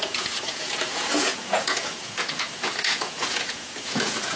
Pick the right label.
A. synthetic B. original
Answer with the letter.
A